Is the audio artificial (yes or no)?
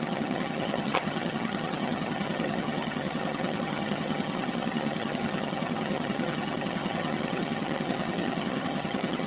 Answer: yes